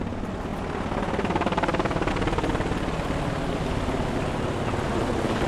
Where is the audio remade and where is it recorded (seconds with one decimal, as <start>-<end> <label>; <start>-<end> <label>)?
0.0-5.5 recorded